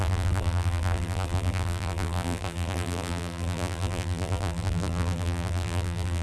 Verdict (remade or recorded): remade